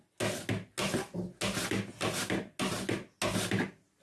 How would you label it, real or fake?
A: real